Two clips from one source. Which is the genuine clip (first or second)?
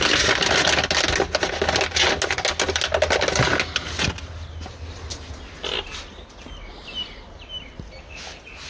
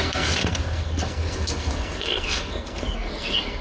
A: first